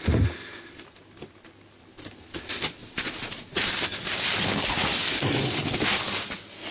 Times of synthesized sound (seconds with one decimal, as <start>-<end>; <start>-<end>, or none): 2.8-3.7

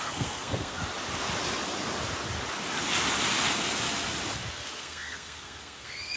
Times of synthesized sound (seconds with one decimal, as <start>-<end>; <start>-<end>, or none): 0.0-0.8; 4.5-6.2

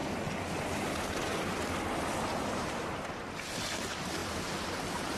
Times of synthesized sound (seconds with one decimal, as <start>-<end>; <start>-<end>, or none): none

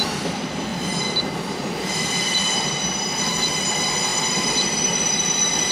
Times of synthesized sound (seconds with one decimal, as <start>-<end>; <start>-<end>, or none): none

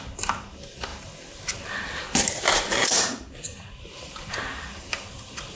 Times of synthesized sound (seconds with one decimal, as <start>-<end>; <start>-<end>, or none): none

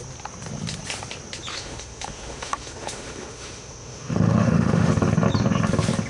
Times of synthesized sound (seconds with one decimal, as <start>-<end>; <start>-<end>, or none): 1.5-4.9

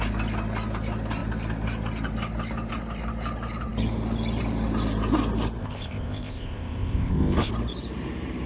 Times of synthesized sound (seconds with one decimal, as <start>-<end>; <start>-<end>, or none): 5.6-7.5